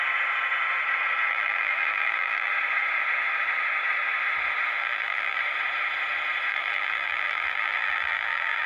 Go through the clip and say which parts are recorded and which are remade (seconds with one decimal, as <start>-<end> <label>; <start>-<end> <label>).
0.0-1.3 recorded; 1.3-2.5 remade; 2.5-4.8 recorded; 4.8-5.4 remade; 5.4-6.5 recorded; 6.5-8.7 remade